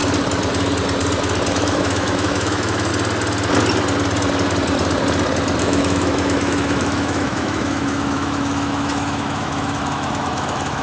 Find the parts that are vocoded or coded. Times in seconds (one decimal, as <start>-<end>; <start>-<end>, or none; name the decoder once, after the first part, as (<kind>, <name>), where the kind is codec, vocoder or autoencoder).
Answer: 1.5-2.9 (autoencoder, DAC-VAE); 5.6-10.8